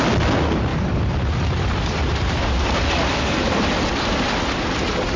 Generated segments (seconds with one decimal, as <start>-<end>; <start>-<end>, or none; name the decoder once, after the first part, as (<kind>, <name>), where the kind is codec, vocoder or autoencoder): 0.7-2.4 (vocoder, BigVGAN v2); 3.0-3.7